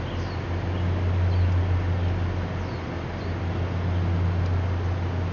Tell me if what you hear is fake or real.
real